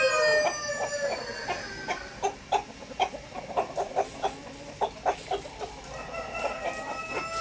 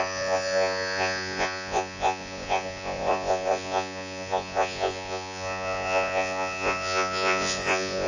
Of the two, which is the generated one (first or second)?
second